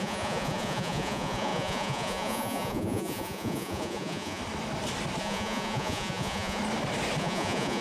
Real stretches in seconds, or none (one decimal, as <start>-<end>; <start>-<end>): 4.4-5.2; 6.6-7.2